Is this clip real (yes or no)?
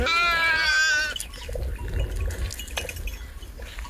yes